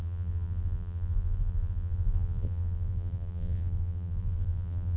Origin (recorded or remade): remade